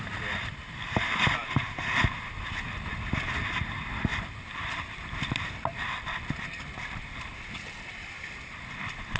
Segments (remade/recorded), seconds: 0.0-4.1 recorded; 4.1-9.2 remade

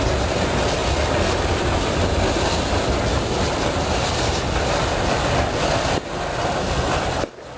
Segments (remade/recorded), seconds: 0.0-7.6 recorded

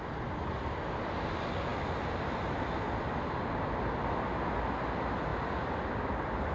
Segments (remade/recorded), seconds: 0.0-6.5 recorded

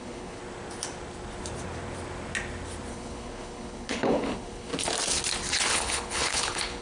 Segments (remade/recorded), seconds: 0.0-0.4 remade; 0.4-2.9 recorded; 2.9-4.7 remade; 4.7-5.7 recorded; 5.7-6.8 remade

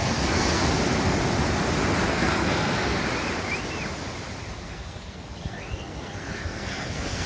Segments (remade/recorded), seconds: 0.0-0.6 remade; 0.6-2.1 recorded; 2.1-3.0 remade; 3.0-4.6 recorded; 4.6-7.3 remade

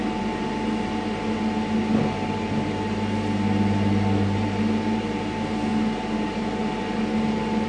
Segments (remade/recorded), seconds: 0.0-7.7 recorded

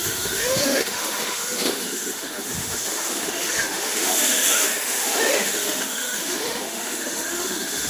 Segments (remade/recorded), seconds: 0.0-7.9 remade